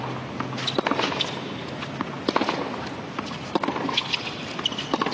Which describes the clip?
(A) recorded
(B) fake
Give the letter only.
A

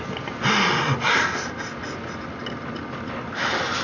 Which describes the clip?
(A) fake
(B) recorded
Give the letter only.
B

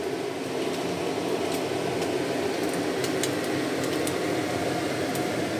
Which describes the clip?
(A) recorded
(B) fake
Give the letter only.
A